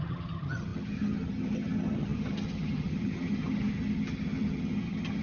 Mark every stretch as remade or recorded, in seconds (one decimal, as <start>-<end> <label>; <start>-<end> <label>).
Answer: 0.0-5.2 remade